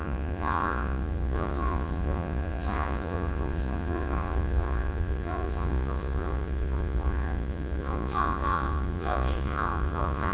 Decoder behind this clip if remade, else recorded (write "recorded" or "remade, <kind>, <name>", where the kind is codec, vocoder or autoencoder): remade, vocoder, Vocos